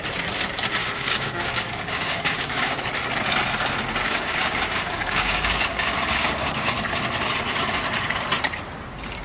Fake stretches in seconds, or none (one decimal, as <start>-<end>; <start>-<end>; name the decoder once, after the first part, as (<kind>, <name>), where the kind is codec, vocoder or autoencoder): 0.8-2.8 (codec, DAC); 4.0-6.7